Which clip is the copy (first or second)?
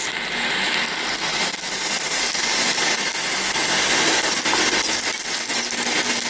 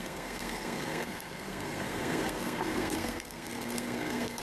second